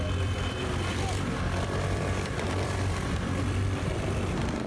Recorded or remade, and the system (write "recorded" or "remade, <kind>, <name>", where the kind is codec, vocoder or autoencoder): remade, vocoder, BigVGAN v2